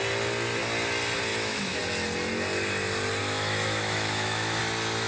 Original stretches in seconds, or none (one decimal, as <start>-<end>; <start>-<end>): 0.0-1.3; 1.8-3.2; 4.6-5.1